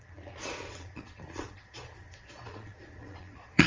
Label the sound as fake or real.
fake